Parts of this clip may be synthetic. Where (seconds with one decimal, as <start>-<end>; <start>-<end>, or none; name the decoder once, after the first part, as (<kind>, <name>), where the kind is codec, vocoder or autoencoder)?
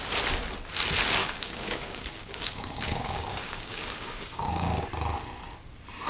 1.2-4.9 (codec, DAC)